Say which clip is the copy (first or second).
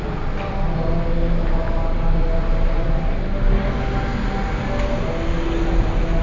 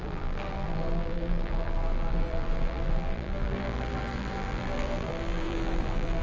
second